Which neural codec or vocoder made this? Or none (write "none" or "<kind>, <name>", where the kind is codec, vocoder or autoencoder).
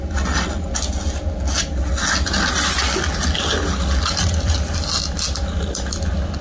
none